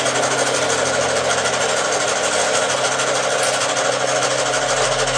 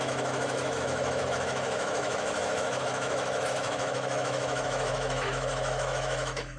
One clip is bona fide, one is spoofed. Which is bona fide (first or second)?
first